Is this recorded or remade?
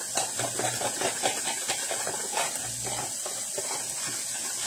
recorded